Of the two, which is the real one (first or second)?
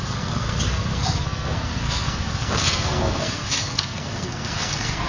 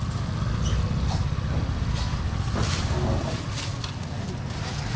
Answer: second